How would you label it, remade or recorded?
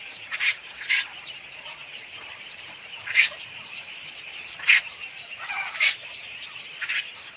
remade